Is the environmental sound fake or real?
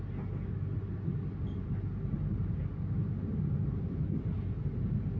real